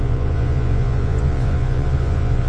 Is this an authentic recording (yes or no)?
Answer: no